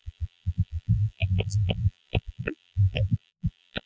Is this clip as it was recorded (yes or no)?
no